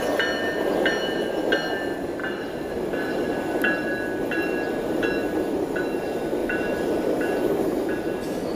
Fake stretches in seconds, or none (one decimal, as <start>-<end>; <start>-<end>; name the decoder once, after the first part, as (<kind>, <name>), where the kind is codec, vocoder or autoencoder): 6.4-7.6 (vocoder, BigVGAN v2)